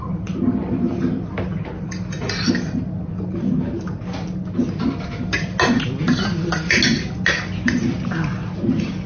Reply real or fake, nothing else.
real